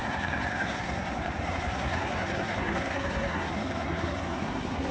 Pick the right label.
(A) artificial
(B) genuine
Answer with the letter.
A